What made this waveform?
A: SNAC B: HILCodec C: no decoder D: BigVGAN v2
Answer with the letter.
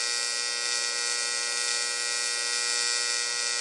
C